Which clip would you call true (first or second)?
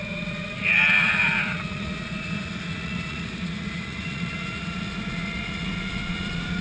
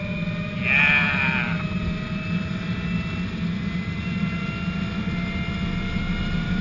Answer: second